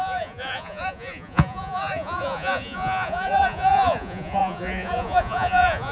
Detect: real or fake fake